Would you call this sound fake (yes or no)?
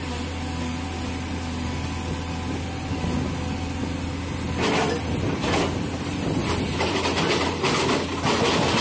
no